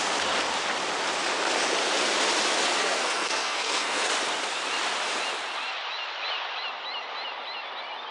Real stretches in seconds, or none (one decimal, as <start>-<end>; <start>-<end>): 0.0-2.8; 4.1-8.1